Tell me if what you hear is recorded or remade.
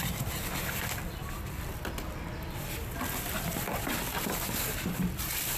remade